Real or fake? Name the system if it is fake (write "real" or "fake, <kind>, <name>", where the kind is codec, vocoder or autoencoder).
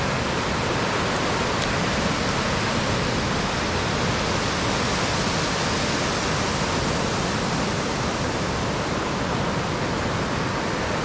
real